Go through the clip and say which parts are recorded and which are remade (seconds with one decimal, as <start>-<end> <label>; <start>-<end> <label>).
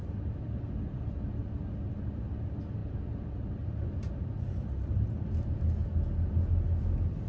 0.0-0.6 remade; 0.6-2.8 recorded; 2.8-6.0 remade; 6.0-7.3 recorded